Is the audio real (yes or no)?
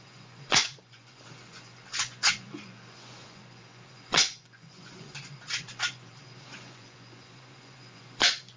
no